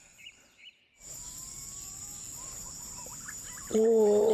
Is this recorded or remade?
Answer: remade